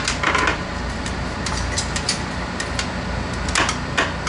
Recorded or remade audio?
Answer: recorded